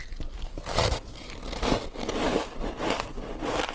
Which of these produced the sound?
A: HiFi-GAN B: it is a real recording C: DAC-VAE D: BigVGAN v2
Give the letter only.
B